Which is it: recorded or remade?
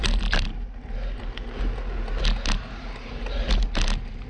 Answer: recorded